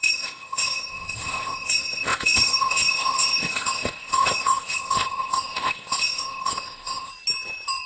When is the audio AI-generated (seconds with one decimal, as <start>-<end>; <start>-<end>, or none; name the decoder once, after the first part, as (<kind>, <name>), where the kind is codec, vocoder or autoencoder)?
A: 0.0-7.1 (codec, ZipCodec)